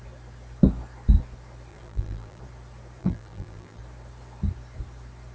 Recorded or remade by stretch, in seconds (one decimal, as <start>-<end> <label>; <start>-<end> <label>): 0.0-1.7 recorded; 1.7-2.4 remade; 2.4-3.0 recorded; 3.0-3.8 remade; 3.8-5.3 recorded